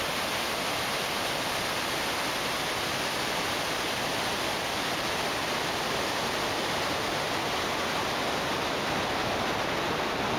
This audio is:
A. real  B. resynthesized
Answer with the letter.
A